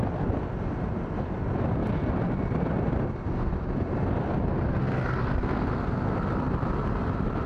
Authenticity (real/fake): real